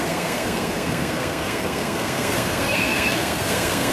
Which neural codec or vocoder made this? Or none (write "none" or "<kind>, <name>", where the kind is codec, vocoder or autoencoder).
codec, SNAC